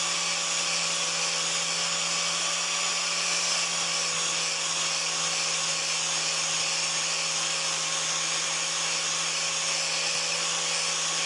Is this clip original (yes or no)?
yes